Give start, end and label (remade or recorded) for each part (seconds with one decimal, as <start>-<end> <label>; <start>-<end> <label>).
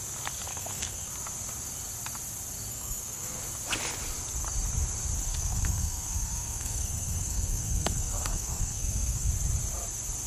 0.0-0.5 recorded; 0.5-1.1 remade; 1.1-2.7 recorded; 2.7-3.4 remade; 3.4-5.3 recorded; 5.3-9.3 remade; 9.3-10.3 recorded